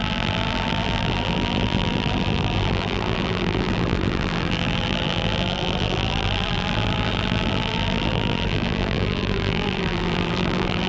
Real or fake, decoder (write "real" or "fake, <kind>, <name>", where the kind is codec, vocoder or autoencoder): fake, vocoder, BigVGAN v2